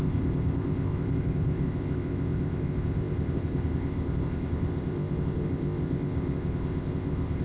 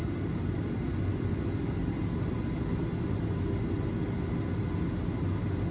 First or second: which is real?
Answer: second